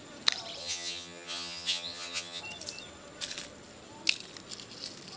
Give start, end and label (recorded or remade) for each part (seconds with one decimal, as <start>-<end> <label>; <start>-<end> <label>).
0.0-0.6 recorded; 0.6-2.4 remade; 2.4-5.2 recorded